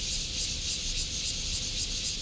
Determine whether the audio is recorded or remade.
recorded